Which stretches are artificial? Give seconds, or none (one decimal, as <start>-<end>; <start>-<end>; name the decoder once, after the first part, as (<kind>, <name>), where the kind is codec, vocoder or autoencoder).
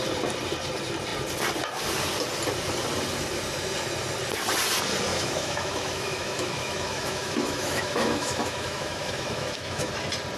5.1-9.9 (autoencoder, DAC-VAE)